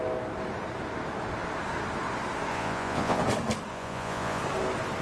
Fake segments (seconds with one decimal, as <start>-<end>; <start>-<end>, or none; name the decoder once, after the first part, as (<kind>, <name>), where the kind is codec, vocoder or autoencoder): 2.5-3.2 (vocoder, Vocos); 3.7-4.4